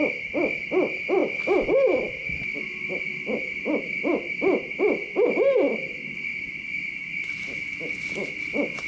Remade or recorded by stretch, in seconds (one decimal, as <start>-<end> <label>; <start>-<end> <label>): 0.0-8.9 recorded